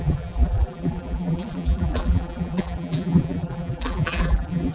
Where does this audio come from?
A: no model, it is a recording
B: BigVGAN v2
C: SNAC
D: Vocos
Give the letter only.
B